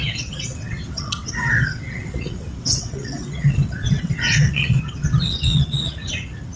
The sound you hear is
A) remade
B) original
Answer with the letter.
A